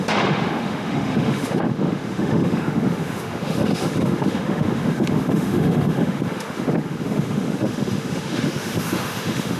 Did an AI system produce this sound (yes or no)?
yes